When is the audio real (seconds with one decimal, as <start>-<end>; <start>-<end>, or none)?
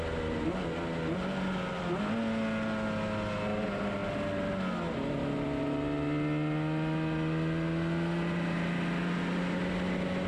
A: 0.0-10.3